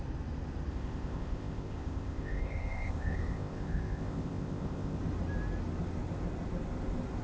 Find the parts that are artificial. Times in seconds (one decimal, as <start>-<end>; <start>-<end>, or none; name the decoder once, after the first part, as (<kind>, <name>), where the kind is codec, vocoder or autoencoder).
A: 0.7-5.0 (codec, ZipCodec)

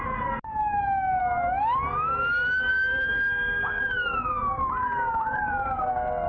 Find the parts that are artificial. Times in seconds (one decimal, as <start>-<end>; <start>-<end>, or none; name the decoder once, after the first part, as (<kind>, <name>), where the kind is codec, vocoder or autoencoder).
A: 0.6-1.2 (codec, DAC); 2.7-6.3

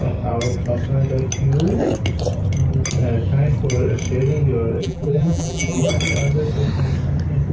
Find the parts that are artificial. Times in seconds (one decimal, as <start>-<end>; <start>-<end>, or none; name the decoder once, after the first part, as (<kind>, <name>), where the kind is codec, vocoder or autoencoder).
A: 4.8-5.9 (vocoder, BigVGAN v2)

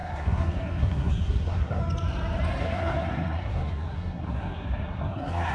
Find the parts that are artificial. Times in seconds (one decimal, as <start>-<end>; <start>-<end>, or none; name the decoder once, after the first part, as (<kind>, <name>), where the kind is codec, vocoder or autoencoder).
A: 0.0-1.8 (codec, SNAC); 2.6-5.5

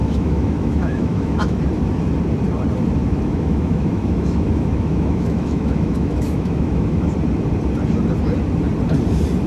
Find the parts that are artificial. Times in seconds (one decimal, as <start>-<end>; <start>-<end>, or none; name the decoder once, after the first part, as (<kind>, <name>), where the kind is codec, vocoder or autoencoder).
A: 0.0-1.6 (autoencoder, DAC-VAE); 3.0-7.1

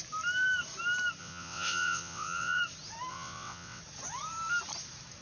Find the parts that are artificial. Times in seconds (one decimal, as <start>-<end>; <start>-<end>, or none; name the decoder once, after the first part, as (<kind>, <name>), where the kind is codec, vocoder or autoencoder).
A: 1.2-2.6 (vocoder, WaveNeXt); 3.1-3.8

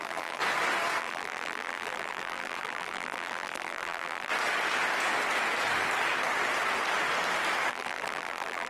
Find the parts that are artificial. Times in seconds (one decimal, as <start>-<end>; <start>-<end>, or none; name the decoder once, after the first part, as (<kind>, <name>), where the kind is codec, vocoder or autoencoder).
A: 0.0-0.4 (vocoder, BigVGAN v2); 1.0-4.3; 7.7-8.7